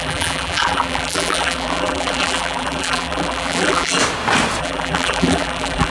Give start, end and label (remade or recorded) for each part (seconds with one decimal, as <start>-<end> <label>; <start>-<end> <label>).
0.0-4.0 remade; 4.0-4.6 recorded; 4.6-5.9 remade